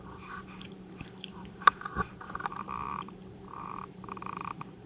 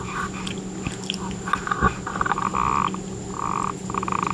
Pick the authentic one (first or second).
second